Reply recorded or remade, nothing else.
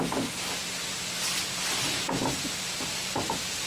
remade